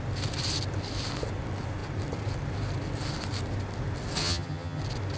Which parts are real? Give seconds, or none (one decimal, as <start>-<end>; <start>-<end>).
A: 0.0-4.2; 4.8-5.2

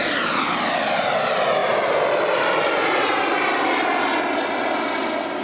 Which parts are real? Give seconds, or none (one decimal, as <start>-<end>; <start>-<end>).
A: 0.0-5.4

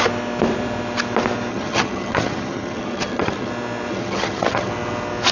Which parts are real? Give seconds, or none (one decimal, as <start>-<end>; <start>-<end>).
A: 0.0-1.5; 3.5-3.9; 4.7-5.3